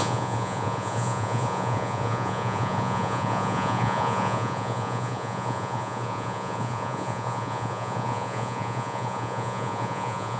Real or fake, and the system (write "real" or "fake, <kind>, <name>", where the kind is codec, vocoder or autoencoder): fake, vocoder, Vocos